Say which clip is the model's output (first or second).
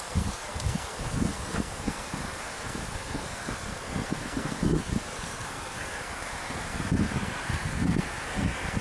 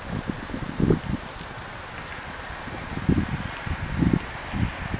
first